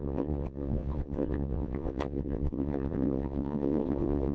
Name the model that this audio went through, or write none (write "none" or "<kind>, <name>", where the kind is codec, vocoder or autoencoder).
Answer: vocoder, WaveNeXt